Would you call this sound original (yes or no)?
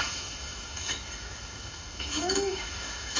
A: no